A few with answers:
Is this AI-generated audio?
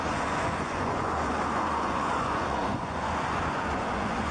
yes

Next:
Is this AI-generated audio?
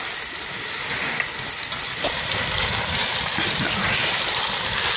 no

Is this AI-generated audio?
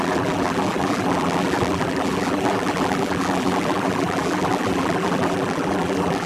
yes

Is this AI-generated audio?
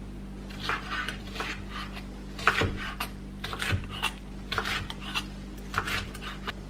no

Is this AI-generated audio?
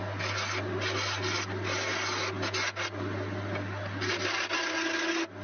no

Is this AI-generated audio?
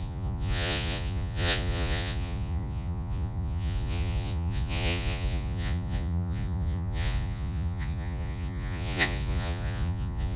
yes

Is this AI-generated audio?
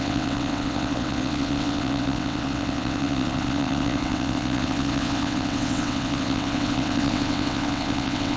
yes